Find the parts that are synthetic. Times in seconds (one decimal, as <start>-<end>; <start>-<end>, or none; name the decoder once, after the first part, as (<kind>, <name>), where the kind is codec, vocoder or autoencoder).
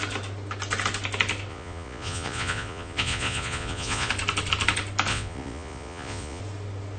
1.5-4.1 (vocoder, Vocos); 5.1-6.4